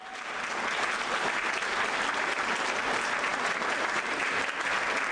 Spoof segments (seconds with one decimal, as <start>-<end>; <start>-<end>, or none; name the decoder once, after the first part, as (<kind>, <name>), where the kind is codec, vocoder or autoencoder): none